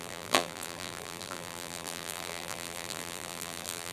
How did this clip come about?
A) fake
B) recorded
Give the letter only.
A